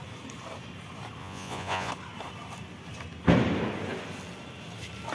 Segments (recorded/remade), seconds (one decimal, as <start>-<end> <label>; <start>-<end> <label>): 0.0-1.2 recorded; 1.2-1.9 remade; 1.9-5.1 recorded

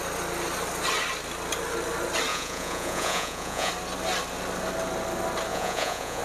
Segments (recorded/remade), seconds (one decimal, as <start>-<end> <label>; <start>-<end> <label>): 0.0-2.3 recorded; 2.3-3.7 remade; 3.7-5.5 recorded; 5.5-6.2 remade

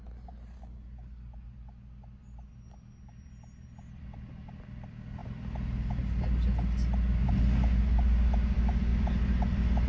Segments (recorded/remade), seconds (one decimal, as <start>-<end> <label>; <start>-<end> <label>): 0.0-9.9 recorded

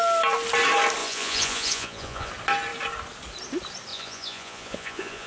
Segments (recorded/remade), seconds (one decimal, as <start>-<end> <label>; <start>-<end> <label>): 0.0-1.0 recorded; 1.0-2.3 remade; 2.3-3.9 recorded; 3.9-5.3 remade

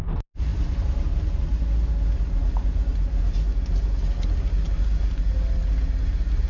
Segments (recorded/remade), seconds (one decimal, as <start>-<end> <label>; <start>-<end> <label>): 0.0-6.5 recorded

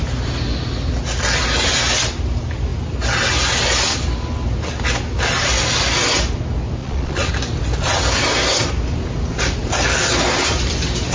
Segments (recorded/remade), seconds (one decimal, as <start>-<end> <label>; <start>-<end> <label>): 0.0-6.8 recorded; 6.8-7.3 remade; 7.3-11.1 recorded

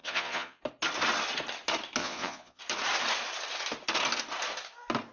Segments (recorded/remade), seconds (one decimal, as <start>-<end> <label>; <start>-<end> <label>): 0.0-0.6 remade; 0.6-2.0 recorded; 2.0-2.6 remade; 2.6-5.1 recorded